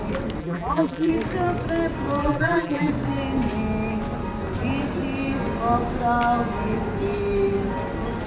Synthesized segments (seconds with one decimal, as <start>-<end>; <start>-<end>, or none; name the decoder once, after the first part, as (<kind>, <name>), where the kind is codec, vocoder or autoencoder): 0.4-1.1 (vocoder, BigVGAN v2); 2.2-2.9

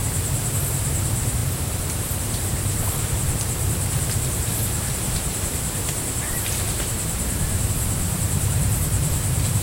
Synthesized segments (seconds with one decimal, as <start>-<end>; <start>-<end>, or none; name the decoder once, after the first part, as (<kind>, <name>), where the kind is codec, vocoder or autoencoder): 0.6-9.6 (vocoder, BigVGAN v2)

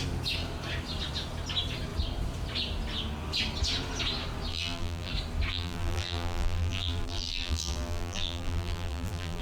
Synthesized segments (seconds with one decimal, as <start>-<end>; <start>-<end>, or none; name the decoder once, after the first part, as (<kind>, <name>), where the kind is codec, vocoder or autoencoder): 4.5-5.1 (vocoder, BigVGAN v2); 5.5-9.4

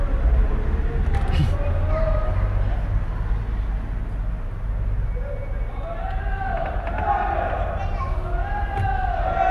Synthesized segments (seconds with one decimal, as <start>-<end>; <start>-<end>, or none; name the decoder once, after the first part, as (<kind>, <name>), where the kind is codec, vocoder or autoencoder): none

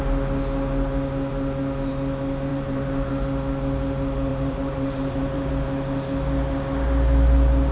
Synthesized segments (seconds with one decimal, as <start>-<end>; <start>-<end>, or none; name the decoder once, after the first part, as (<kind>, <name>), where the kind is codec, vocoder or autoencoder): 2.5-3.1 (vocoder, BigVGAN v2); 4.3-5.5

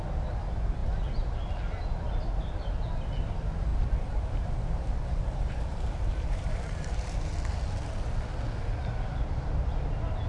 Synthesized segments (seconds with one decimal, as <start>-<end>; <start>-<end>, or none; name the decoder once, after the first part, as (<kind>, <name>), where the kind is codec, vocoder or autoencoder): 3.7-7.3 (vocoder, BigVGAN v2)

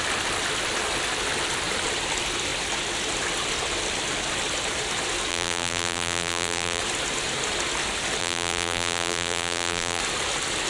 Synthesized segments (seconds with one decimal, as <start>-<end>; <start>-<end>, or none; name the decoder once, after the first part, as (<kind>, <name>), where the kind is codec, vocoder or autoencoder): 5.3-6.8 (vocoder, BigVGAN v2); 8.2-10.0